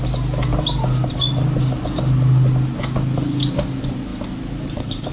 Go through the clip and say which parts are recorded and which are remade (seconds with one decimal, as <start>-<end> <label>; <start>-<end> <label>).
0.0-5.1 recorded